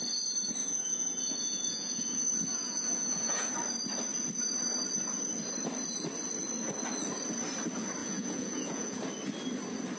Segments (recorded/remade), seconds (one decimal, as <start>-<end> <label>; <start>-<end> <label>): 0.0-0.6 recorded; 0.6-3.5 remade; 3.5-8.0 recorded; 8.0-9.0 remade; 9.0-10.0 recorded